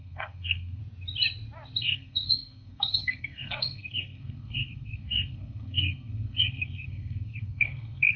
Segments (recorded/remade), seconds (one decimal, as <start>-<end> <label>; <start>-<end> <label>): 0.0-0.8 remade; 0.8-1.8 recorded; 1.8-8.2 remade